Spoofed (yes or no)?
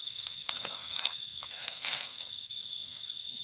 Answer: yes